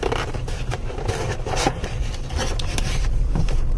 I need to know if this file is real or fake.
fake